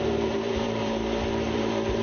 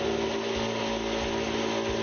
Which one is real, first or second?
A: second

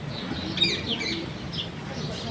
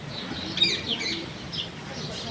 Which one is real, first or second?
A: first